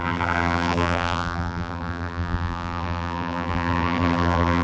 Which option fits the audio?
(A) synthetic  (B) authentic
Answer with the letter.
A